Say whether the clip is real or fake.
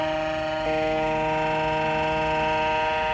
real